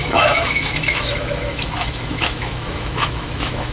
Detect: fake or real fake